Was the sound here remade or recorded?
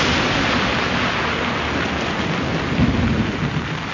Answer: recorded